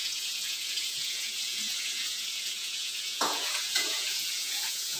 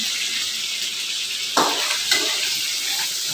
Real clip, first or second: second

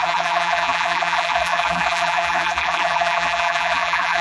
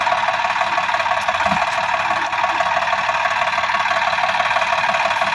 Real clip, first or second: second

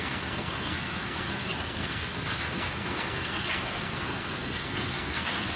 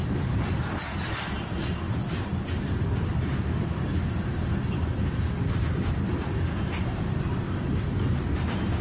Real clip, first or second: second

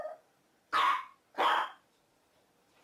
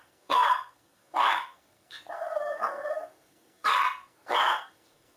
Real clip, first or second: first